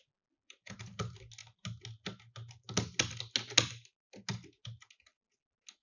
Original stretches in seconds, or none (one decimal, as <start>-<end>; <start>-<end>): 0.0-5.8